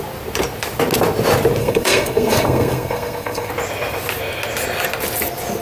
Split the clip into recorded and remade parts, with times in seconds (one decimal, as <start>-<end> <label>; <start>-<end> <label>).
0.0-1.6 recorded; 1.6-3.5 remade; 3.5-5.6 recorded